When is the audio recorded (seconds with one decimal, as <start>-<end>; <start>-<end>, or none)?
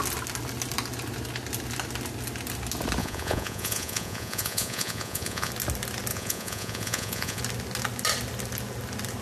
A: 0.0-3.0; 5.5-6.1; 7.4-9.2